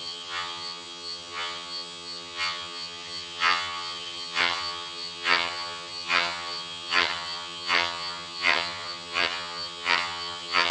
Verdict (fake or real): fake